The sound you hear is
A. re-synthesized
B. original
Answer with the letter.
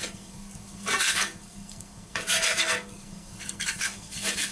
A